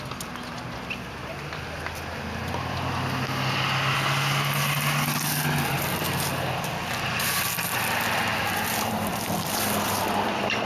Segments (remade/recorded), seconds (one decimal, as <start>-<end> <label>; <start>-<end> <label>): 0.0-8.3 recorded; 8.3-10.7 remade